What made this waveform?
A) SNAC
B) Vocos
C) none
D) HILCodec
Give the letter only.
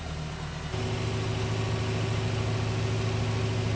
C